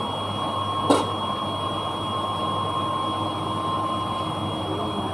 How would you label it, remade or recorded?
recorded